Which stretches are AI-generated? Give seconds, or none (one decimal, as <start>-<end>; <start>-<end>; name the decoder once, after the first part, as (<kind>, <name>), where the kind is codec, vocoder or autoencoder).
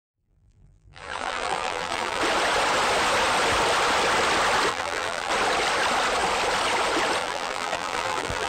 0.0-2.2 (vocoder, BigVGAN v2); 4.7-5.3; 7.2-8.5